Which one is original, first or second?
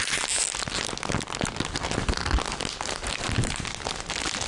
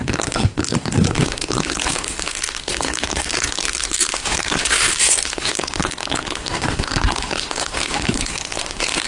first